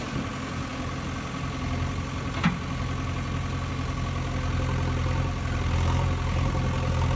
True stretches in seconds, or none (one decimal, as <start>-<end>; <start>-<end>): 0.0-7.2